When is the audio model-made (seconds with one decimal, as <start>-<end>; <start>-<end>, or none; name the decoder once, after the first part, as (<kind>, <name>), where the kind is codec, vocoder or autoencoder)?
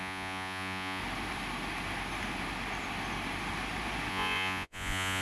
0.0-1.0 (vocoder, Vocos); 4.1-5.2